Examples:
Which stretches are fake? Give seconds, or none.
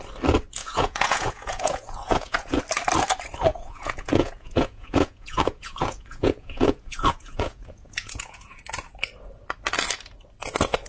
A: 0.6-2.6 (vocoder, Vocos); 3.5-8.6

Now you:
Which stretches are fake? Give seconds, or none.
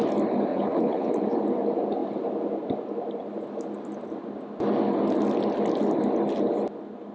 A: 0.5-1.1 (vocoder, Vocos)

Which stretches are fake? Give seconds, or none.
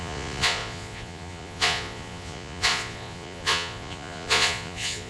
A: 0.0-5.1 (vocoder, Vocos)